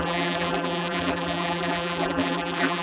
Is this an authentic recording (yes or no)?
no